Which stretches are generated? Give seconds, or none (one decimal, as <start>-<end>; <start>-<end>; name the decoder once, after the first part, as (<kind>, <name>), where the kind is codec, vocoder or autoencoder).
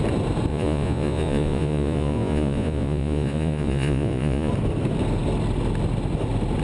0.5-4.5 (vocoder, Vocos)